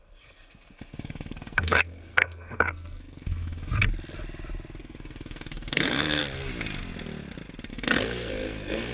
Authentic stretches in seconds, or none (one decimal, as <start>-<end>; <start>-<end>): 3.7-4.8; 6.2-7.7